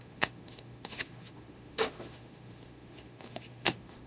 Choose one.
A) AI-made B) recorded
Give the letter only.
A